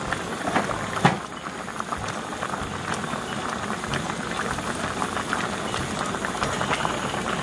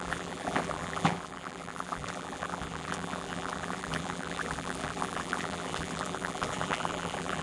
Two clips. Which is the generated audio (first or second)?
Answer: second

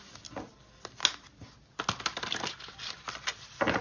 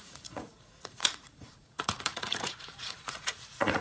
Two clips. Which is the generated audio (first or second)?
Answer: second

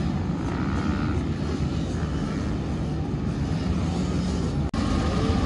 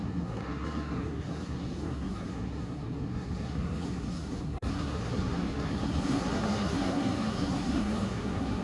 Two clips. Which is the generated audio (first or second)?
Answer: second